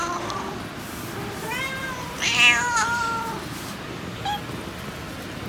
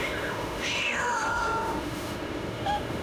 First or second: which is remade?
second